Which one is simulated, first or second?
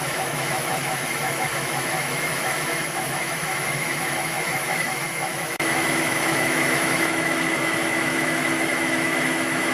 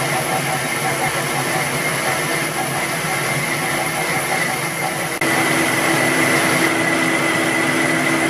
first